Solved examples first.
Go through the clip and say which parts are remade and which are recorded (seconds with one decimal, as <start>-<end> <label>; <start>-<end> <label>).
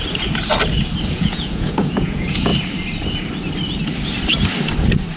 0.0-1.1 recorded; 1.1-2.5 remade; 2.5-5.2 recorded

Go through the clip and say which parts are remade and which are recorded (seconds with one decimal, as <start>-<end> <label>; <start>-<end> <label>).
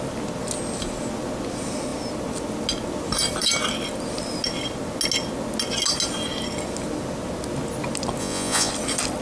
0.0-8.2 recorded; 8.2-8.7 remade; 8.7-9.2 recorded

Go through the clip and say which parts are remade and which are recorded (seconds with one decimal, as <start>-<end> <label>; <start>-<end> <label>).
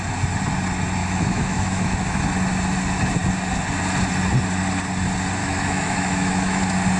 0.0-1.0 recorded; 1.0-2.2 remade; 2.2-5.4 recorded; 5.4-6.6 remade; 6.6-7.0 recorded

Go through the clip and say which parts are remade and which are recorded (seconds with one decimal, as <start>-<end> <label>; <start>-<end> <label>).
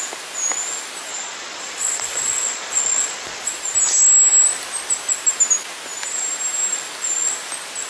0.0-1.1 recorded; 1.1-3.5 remade; 3.5-7.9 recorded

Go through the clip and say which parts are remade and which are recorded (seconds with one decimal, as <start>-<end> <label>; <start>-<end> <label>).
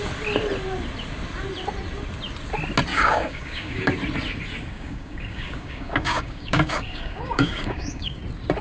0.0-2.9 recorded; 2.9-3.9 remade; 3.9-4.7 recorded; 4.7-8.2 remade; 8.2-8.6 recorded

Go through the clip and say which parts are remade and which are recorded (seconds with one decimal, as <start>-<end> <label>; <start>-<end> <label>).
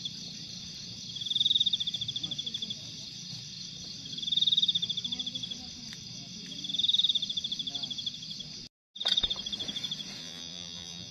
0.0-10.2 recorded; 10.2-11.1 remade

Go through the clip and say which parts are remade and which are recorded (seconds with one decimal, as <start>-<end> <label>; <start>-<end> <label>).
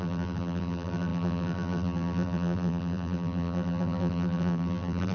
0.0-5.1 remade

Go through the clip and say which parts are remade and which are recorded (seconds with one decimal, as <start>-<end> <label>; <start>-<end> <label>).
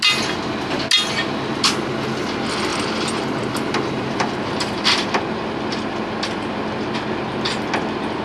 0.0-2.7 recorded; 2.7-5.1 remade; 5.1-8.2 recorded